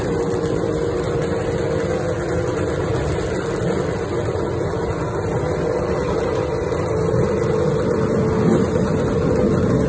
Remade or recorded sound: recorded